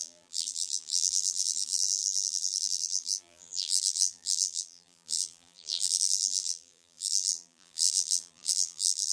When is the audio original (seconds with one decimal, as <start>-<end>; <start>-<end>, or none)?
none